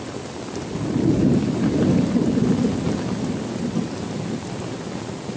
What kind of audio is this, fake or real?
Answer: real